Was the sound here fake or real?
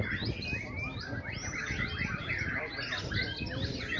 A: fake